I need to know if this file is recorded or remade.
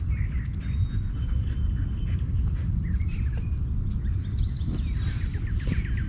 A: recorded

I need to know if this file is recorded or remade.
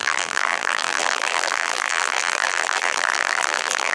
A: remade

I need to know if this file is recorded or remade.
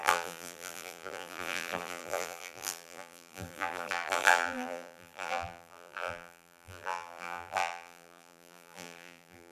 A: remade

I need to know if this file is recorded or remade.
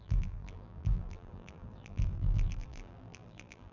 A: remade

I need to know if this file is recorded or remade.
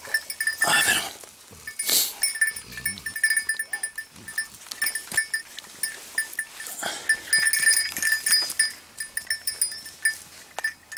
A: recorded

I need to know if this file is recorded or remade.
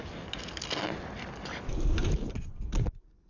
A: recorded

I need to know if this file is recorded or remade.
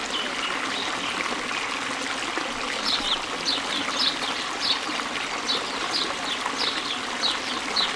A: recorded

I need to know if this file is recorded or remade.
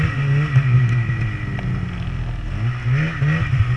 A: recorded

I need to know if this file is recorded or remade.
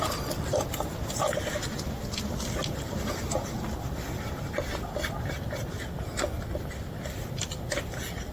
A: recorded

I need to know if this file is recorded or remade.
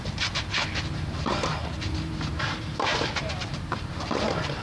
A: remade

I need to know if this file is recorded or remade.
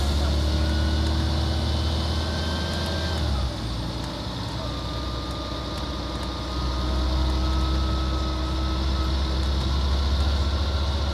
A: recorded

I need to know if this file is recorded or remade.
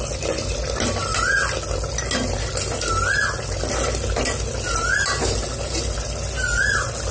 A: recorded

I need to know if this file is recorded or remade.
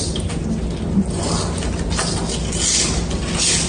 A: recorded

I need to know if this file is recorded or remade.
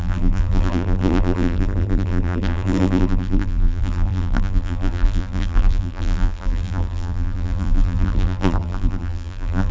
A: remade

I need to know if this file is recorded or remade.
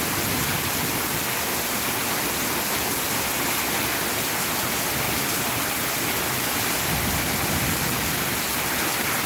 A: recorded